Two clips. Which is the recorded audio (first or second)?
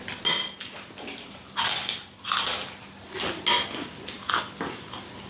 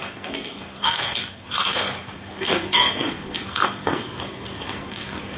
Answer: first